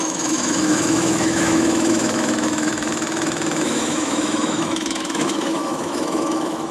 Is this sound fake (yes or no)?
yes